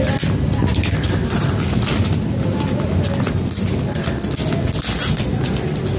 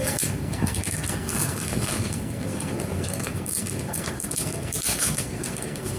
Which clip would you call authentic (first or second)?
first